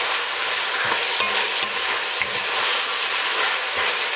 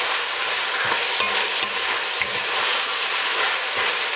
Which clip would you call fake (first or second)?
second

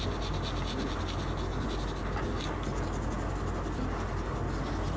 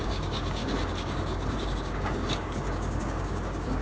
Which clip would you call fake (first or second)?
second